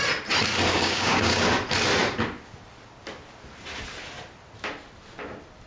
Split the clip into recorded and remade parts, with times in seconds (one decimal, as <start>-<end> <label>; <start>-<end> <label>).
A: 0.0-0.7 recorded; 0.7-1.4 remade; 1.4-5.7 recorded